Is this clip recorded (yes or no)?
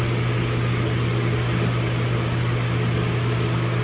yes